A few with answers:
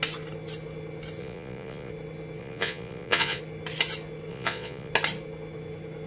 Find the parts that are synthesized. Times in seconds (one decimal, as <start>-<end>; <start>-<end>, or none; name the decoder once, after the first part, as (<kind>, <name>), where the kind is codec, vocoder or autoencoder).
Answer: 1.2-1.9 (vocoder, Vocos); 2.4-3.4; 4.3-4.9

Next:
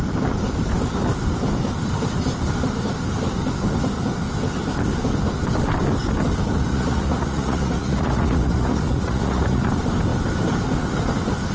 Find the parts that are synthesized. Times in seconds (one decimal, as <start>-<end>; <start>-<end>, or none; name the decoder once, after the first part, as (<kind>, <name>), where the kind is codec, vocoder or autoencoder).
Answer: 6.7-9.7 (vocoder, Vocos)

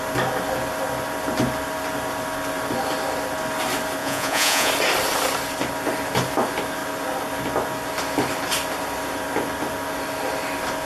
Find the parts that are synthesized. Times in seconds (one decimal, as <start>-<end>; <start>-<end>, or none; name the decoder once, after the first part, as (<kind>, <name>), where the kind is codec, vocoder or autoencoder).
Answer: 4.0-4.7 (vocoder, Vocos)

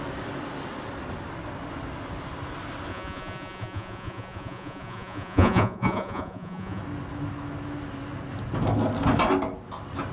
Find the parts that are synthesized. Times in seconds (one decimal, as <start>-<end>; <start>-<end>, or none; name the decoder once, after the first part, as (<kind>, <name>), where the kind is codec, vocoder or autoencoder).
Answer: 2.9-6.8 (vocoder, Vocos)

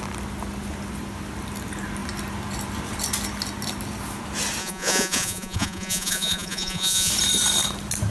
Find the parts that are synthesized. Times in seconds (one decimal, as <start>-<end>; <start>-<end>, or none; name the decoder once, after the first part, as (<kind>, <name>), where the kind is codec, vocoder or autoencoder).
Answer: 4.6-7.1 (vocoder, Vocos)

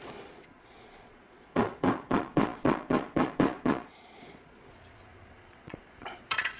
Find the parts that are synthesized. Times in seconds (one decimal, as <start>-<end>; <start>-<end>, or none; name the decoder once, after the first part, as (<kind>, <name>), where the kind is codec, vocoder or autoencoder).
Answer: 0.0-6.6 (vocoder, Vocos)